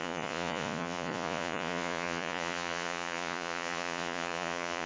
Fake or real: fake